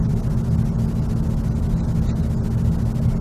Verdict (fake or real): real